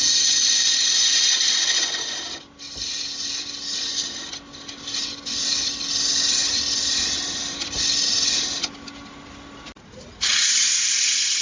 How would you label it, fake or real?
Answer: real